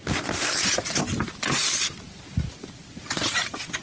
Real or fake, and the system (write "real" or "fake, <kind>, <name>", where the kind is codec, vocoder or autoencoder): real